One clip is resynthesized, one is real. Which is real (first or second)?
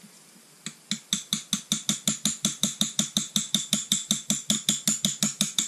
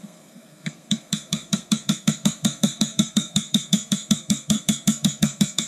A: first